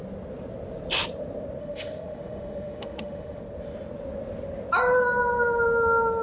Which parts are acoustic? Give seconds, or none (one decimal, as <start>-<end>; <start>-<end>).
0.0-1.6; 3.4-6.2